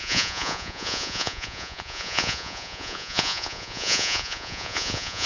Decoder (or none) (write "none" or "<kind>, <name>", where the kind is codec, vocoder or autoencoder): vocoder, Vocos